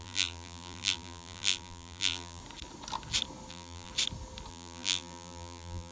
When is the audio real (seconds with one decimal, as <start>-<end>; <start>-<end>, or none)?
2.4-3.5; 3.9-4.5